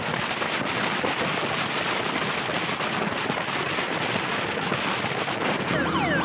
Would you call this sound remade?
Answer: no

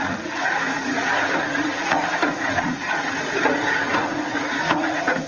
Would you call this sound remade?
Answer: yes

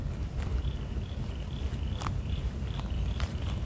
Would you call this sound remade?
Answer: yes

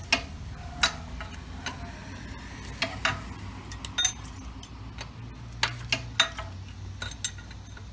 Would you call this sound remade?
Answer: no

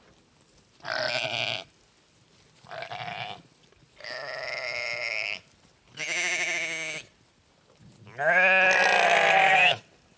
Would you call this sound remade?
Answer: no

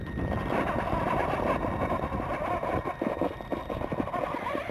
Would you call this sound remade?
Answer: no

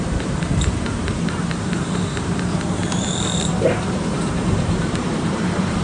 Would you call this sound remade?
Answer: yes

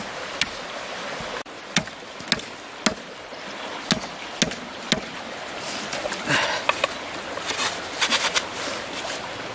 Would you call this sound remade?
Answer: no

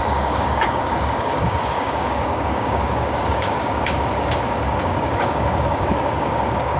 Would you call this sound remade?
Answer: yes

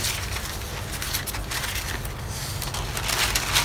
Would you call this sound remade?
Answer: no